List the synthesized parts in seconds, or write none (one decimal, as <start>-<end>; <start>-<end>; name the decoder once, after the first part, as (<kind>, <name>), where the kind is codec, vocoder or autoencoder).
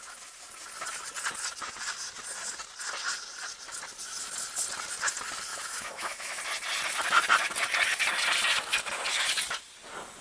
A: 5.5-6.4 (autoencoder, DAC-VAE)